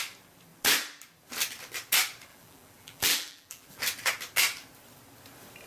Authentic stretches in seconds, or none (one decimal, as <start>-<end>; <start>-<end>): 0.0-2.3; 3.8-5.7